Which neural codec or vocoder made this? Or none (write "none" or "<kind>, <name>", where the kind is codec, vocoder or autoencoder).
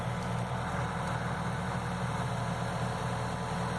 none